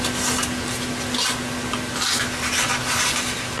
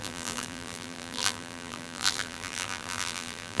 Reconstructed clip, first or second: second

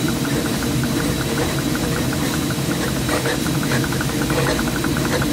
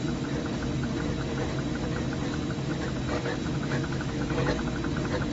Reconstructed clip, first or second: first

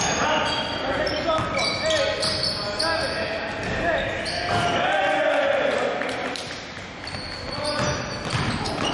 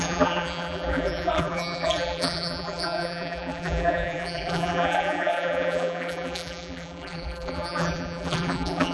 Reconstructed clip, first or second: second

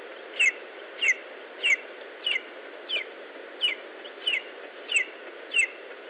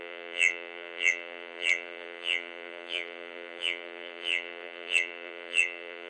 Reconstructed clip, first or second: second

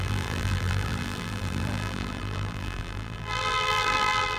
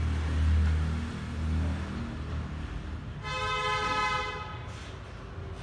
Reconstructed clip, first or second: first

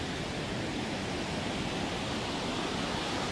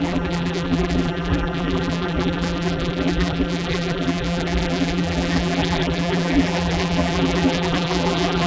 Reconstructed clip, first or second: second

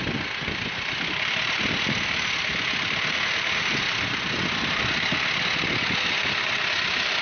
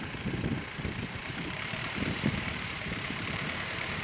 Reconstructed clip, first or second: second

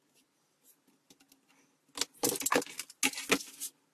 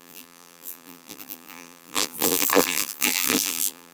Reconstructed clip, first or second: second